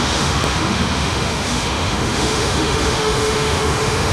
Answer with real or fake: fake